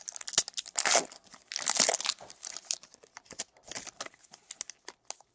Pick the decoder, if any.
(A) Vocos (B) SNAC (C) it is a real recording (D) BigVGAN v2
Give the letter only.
C